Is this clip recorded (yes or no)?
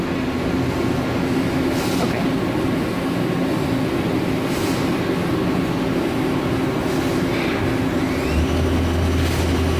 yes